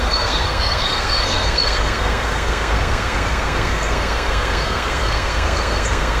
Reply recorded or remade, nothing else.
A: remade